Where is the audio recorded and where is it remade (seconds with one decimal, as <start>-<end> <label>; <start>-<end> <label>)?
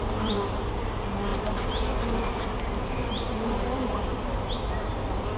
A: 0.0-5.4 recorded